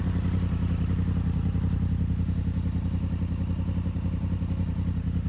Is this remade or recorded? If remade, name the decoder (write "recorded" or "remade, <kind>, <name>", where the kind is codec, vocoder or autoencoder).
recorded